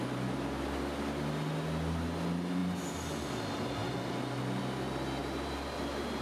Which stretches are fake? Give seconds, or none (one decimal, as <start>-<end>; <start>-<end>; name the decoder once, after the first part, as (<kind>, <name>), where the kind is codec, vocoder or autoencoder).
5.2-6.2 (vocoder, BigVGAN v2)